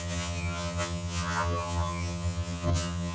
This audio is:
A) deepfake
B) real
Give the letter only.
A